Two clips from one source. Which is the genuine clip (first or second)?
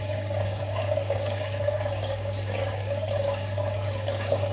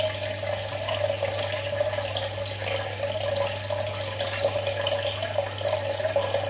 second